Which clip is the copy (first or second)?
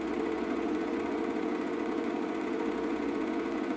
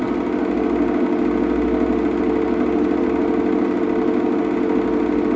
first